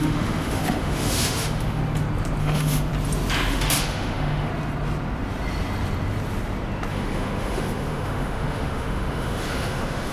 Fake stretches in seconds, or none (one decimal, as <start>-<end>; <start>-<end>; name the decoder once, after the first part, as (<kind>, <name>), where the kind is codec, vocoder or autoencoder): 0.0-1.8 (autoencoder, DAC-VAE); 2.4-2.9; 3.5-4.5; 6.9-10.1